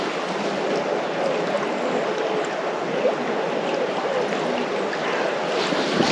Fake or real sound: real